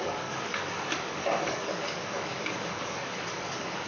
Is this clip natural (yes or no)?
no